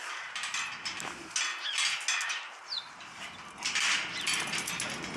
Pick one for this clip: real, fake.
real